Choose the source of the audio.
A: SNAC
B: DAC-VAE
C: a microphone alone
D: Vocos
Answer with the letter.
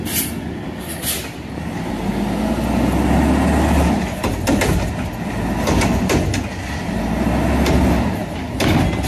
C